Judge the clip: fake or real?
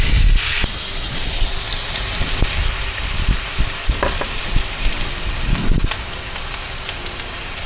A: real